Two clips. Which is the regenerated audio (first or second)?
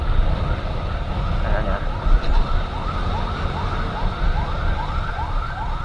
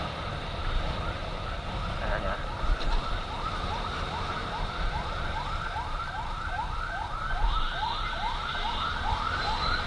second